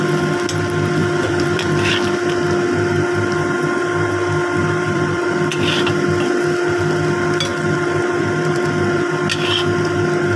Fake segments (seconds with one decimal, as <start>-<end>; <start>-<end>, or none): 1.0-1.9; 4.6-5.7; 7.5-9.2